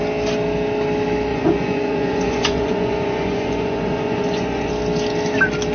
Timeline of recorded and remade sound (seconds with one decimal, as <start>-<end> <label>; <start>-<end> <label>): 0.0-1.3 recorded; 1.3-4.7 remade; 4.7-5.7 recorded